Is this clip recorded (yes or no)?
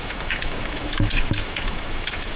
no